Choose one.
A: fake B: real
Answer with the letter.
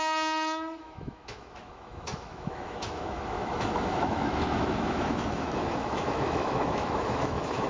A